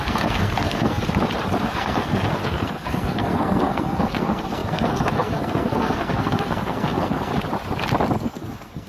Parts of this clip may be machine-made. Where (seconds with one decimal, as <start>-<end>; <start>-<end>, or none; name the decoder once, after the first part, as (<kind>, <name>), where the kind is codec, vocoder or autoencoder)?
0.0-1.0 (codec, SNAC); 1.6-7.3; 8.2-8.9